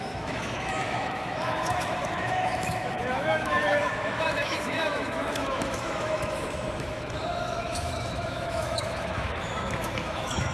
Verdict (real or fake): fake